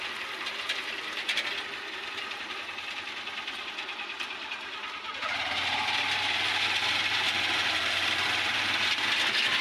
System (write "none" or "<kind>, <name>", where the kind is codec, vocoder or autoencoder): none